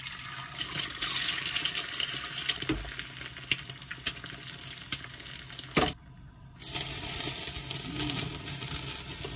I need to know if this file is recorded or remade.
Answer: recorded